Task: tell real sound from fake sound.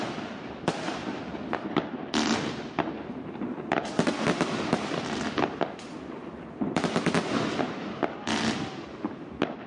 real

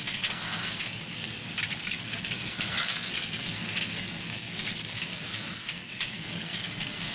fake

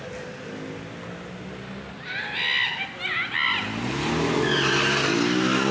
real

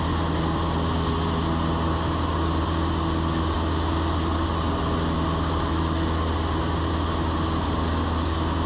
real